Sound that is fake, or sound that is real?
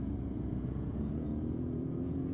fake